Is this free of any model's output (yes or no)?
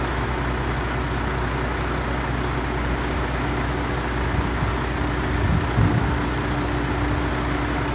yes